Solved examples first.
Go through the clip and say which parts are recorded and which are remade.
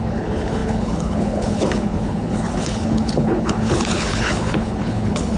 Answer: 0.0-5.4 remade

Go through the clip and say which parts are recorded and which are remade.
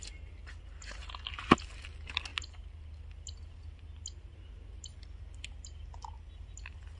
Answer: 0.0-7.0 recorded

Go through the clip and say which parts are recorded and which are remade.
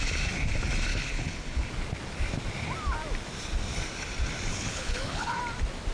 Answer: 0.0-0.9 recorded; 0.9-1.7 remade; 1.7-4.5 recorded; 4.5-5.4 remade; 5.4-5.9 recorded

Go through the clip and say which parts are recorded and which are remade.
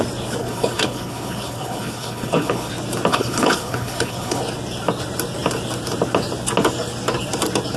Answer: 0.0-0.4 recorded; 0.4-2.7 remade; 2.7-3.1 recorded; 3.1-4.4 remade; 4.4-7.8 recorded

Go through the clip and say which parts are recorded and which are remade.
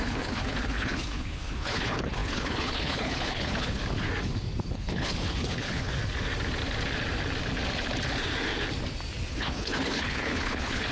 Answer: 0.0-3.8 remade; 3.8-4.7 recorded; 4.7-5.9 remade; 5.9-9.3 recorded; 9.3-10.9 remade